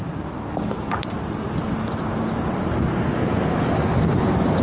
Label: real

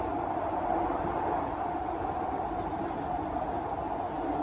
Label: real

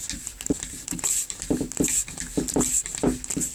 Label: real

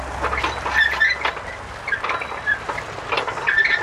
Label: real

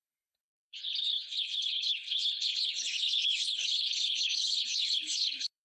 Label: fake